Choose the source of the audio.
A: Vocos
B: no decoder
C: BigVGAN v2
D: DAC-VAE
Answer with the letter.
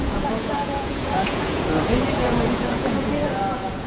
A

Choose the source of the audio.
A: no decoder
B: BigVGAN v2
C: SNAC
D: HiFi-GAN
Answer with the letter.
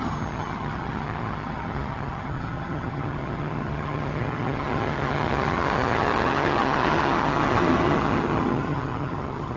D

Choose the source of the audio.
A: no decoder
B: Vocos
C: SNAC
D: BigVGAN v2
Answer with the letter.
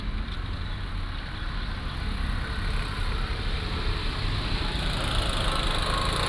D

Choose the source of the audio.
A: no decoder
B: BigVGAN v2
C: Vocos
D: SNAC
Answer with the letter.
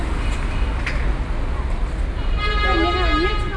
A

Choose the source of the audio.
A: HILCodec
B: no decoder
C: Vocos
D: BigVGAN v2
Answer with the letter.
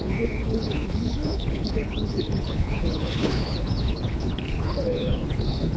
A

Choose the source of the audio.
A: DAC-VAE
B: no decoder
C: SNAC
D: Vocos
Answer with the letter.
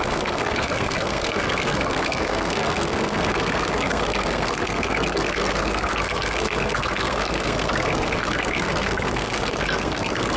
C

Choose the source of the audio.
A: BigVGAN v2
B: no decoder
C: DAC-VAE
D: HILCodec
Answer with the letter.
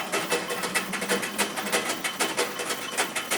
B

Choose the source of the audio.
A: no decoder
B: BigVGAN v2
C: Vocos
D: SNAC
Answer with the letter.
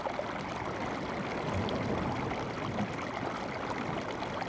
A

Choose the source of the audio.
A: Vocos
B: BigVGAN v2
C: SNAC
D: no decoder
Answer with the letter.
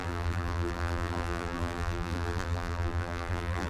B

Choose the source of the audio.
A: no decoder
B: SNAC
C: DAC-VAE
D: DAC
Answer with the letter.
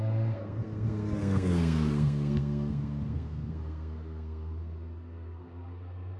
B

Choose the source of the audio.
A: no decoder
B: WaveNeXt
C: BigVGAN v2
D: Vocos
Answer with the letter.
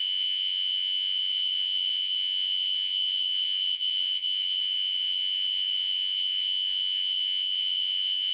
D